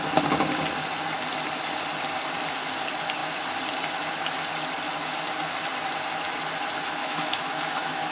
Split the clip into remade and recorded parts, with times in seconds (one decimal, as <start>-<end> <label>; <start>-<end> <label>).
0.0-7.0 recorded; 7.0-8.1 remade